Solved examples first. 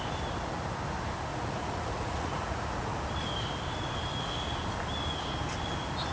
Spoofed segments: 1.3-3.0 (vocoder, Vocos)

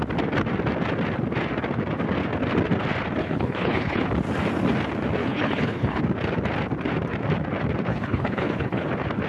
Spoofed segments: 3.2-4.0 (codec, HILCodec); 5.2-6.0; 7.9-8.9

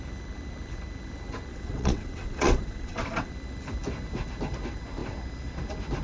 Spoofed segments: 1.5-3.3 (vocoder, WaveNeXt)